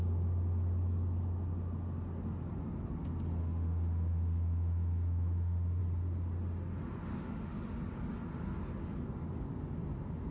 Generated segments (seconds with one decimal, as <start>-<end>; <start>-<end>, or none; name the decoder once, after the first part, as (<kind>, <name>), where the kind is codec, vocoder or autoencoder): 3.4-5.8 (autoencoder, DAC-VAE); 7.1-7.6